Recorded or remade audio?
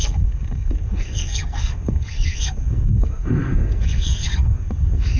remade